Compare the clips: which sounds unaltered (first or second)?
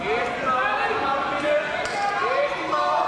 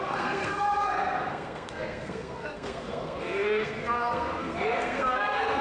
first